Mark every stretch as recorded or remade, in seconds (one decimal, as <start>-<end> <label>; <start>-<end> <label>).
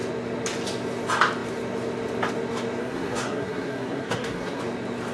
0.0-2.8 recorded; 2.8-4.6 remade; 4.6-5.1 recorded